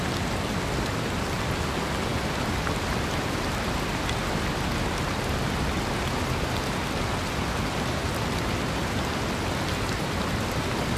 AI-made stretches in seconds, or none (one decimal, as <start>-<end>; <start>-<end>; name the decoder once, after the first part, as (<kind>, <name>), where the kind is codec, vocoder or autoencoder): none